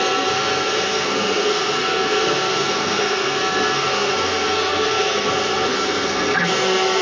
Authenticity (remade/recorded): remade